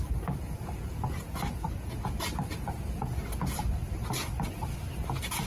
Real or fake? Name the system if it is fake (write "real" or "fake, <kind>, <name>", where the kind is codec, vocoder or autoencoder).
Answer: real